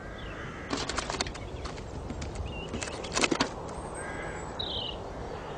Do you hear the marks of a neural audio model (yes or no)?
no